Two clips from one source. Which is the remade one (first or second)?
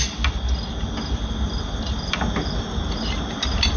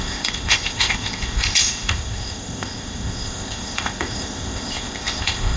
second